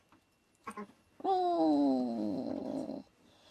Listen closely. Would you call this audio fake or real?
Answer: real